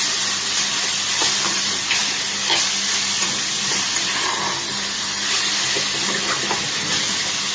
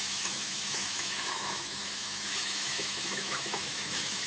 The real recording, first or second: first